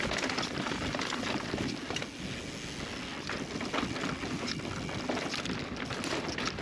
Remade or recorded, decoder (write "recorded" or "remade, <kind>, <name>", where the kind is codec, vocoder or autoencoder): recorded